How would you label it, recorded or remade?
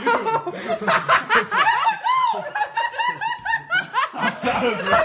recorded